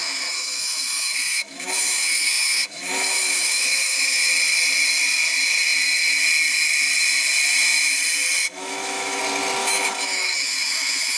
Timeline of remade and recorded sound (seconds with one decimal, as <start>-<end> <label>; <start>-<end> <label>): 0.0-4.3 remade; 4.3-8.4 recorded; 8.4-9.2 remade; 9.2-9.6 recorded; 9.6-11.2 remade